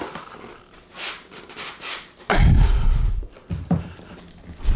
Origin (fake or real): real